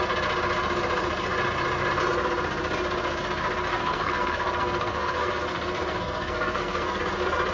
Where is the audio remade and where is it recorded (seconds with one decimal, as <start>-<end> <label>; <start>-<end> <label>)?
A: 0.0-3.7 recorded; 3.7-7.0 remade; 7.0-7.5 recorded